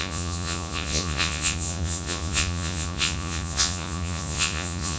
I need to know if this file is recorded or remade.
remade